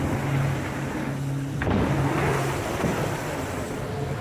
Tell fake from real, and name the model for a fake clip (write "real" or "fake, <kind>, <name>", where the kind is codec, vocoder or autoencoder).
fake, vocoder, BigVGAN v2